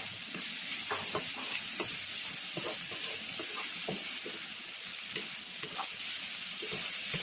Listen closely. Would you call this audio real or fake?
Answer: real